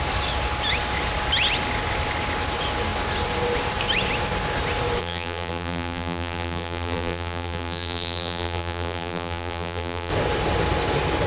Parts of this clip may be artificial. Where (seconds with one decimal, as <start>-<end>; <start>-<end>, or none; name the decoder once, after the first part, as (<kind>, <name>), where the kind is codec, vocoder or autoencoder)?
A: 5.0-10.1 (vocoder, BigVGAN v2)

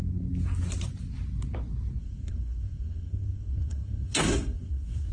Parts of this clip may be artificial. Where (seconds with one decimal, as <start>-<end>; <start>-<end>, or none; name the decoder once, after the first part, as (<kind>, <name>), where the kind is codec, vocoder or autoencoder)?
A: 2.0-5.1 (codec, SNAC)

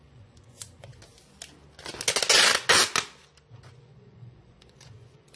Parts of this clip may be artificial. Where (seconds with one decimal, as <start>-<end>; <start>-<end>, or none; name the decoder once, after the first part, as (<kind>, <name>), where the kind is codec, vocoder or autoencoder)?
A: 0.0-1.0 (vocoder, Vocos); 3.5-5.4

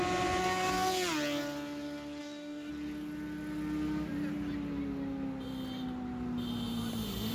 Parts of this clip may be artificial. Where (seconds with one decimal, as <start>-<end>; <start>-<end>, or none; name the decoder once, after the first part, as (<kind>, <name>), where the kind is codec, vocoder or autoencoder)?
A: 0.4-0.9 (codec, DAC); 2.2-2.7

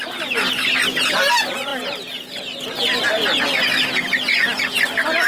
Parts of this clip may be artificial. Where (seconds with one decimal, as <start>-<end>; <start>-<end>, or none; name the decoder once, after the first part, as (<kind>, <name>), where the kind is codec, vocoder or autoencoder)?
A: none

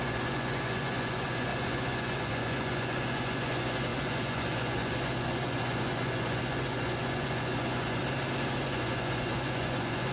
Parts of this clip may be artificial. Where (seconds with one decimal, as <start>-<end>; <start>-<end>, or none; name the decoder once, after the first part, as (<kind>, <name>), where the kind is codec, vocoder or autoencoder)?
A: 0.0-8.0 (vocoder, Vocos); 8.6-10.1